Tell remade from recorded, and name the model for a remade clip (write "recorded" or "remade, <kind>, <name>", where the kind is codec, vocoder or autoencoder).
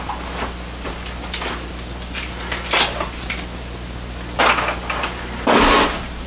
recorded